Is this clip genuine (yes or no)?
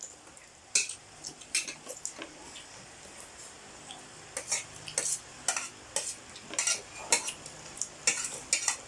yes